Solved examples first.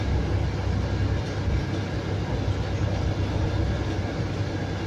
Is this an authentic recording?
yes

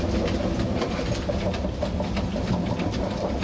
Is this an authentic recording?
yes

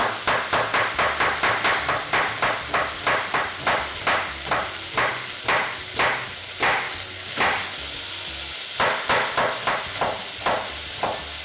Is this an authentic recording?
yes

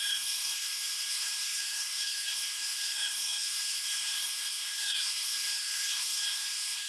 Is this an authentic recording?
no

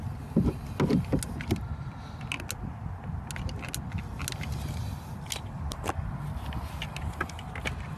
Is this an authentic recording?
yes